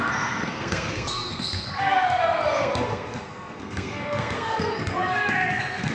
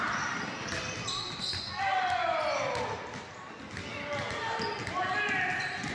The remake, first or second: first